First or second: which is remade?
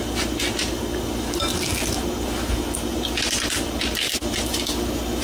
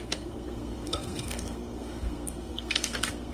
second